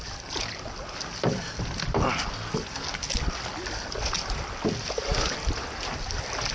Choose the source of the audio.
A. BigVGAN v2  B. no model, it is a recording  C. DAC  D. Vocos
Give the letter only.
B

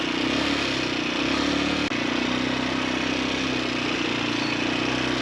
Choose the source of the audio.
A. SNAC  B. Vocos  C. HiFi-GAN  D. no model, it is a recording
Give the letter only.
D